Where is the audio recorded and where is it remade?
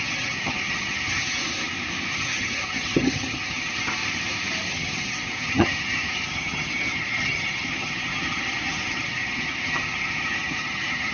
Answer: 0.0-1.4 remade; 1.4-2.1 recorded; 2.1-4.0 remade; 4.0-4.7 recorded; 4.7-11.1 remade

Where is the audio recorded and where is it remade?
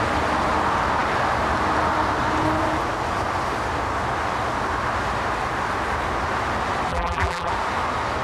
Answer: 0.0-6.9 recorded; 6.9-7.5 remade; 7.5-8.2 recorded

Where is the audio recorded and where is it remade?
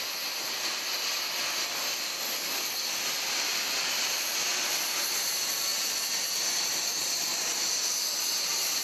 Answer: 0.0-8.8 recorded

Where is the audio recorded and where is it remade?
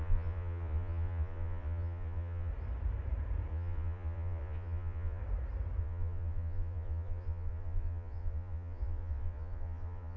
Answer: 0.0-2.5 remade; 2.5-3.5 recorded; 3.5-5.2 remade; 5.2-5.8 recorded; 5.8-10.2 remade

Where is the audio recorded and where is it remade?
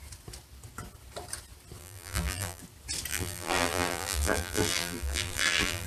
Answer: 0.0-1.8 recorded; 1.8-2.6 remade; 2.6-3.1 recorded; 3.1-5.9 remade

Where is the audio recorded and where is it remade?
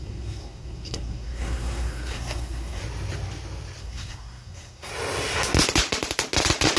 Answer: 0.0-2.8 remade; 2.8-3.8 recorded; 3.8-4.9 remade; 4.9-6.8 recorded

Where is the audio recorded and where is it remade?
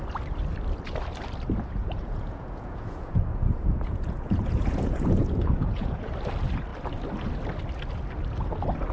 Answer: 0.0-1.8 recorded; 1.8-6.1 remade; 6.1-8.9 recorded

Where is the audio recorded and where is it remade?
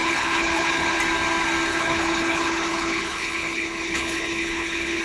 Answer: 0.0-1.0 remade; 1.0-1.7 recorded; 1.7-5.0 remade